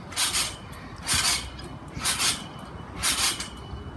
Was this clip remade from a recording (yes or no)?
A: no